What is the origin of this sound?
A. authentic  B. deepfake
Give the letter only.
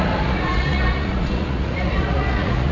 B